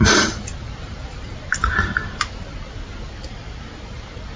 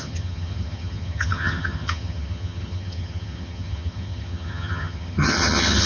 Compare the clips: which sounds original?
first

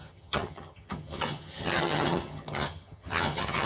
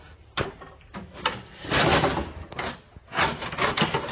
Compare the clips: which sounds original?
second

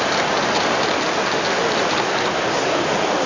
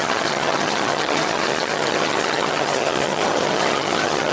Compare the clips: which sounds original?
first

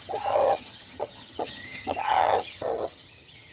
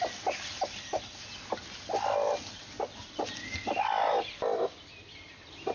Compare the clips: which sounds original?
second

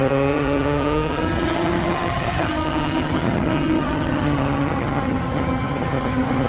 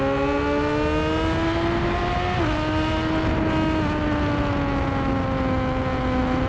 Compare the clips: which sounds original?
second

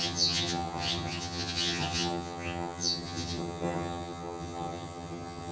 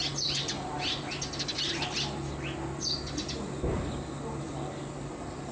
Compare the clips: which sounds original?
second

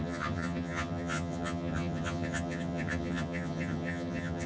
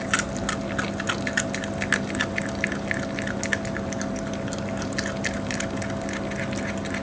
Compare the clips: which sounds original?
second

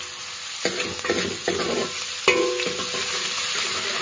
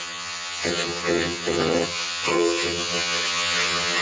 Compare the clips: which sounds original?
first